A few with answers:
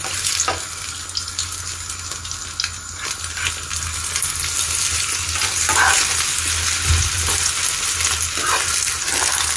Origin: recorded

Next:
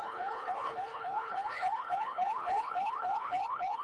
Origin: remade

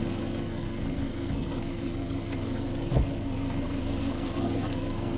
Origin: remade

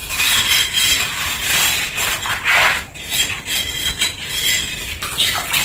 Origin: remade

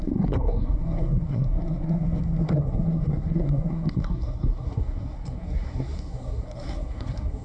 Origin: remade